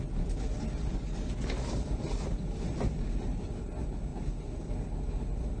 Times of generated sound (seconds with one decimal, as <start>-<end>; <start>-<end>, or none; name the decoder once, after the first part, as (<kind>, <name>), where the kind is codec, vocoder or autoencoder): 0.9-1.4 (codec, DAC)